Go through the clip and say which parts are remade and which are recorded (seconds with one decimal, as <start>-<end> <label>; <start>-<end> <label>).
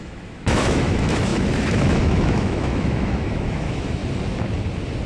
0.0-4.0 remade; 4.0-5.1 recorded